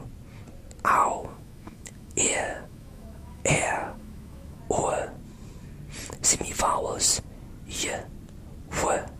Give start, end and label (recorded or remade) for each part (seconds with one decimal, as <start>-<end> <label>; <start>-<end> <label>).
0.0-1.0 recorded; 1.0-4.6 remade; 4.6-9.2 recorded